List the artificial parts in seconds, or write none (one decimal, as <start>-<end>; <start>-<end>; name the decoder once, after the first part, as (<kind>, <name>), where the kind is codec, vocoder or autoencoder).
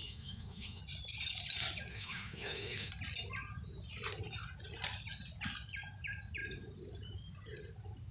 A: 0.0-0.8 (autoencoder, DAC-VAE); 1.9-2.9